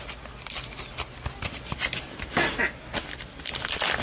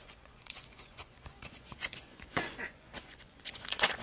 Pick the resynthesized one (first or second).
second